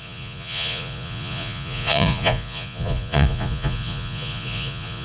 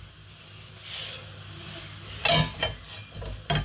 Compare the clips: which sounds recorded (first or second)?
second